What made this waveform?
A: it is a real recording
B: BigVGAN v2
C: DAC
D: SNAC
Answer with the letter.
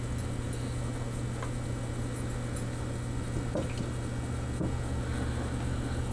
A